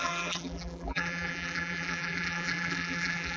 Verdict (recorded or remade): remade